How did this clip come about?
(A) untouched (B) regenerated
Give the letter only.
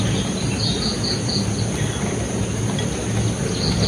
A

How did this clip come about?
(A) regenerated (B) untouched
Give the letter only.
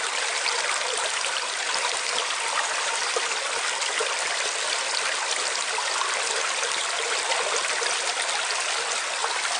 A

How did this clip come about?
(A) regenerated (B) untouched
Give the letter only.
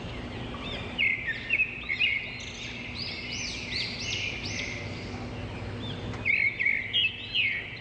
B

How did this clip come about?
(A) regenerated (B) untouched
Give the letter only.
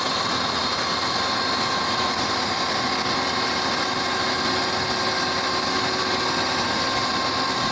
B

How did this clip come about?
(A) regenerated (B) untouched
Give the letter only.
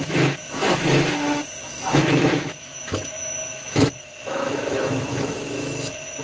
A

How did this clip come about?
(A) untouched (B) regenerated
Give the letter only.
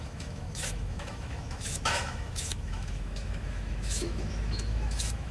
B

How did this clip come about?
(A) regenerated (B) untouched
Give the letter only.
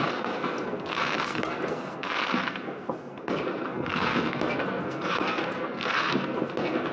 A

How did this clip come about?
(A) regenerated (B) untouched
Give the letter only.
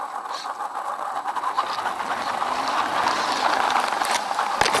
B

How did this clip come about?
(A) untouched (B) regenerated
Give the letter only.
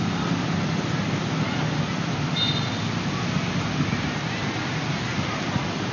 A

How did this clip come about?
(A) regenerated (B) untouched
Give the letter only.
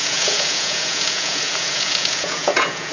A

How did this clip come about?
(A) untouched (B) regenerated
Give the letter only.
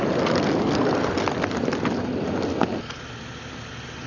A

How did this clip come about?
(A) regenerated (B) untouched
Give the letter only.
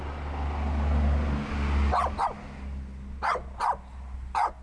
B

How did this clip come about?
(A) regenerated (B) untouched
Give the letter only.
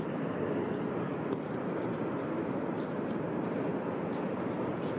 B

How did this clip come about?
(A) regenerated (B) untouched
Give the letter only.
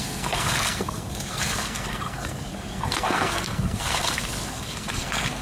A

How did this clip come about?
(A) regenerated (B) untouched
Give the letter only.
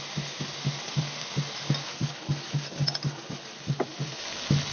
B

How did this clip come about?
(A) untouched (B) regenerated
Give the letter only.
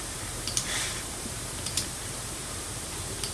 B